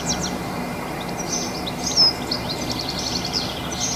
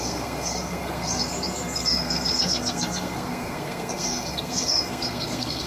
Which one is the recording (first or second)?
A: first